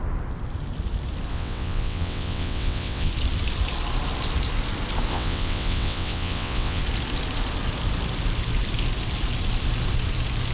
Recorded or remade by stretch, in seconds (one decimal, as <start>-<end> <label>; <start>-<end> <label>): 0.0-1.3 recorded; 1.3-3.1 remade; 3.1-5.1 recorded; 5.1-6.8 remade; 6.8-10.5 recorded